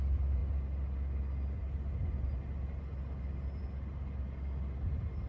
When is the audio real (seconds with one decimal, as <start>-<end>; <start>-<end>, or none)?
0.0-5.3